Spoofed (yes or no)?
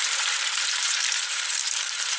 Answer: yes